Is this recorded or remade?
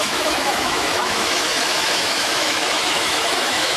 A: remade